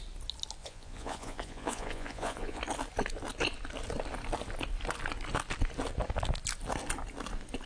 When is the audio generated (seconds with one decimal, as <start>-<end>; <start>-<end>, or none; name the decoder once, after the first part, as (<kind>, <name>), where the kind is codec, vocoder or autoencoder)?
0.6-2.6 (vocoder, Vocos)